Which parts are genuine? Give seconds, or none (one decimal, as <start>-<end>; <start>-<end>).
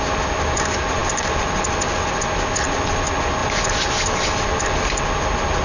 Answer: 0.0-5.6